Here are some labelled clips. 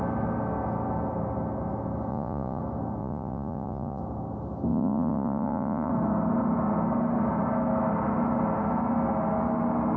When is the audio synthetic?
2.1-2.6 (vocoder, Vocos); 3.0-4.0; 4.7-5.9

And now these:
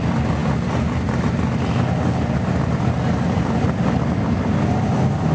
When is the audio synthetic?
none